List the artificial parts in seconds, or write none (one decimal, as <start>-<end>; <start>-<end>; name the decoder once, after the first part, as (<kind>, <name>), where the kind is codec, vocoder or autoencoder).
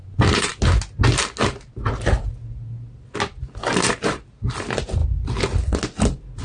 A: none